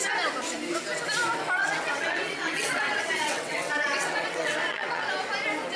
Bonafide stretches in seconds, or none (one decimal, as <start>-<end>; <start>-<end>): 0.0-1.6; 5.1-5.8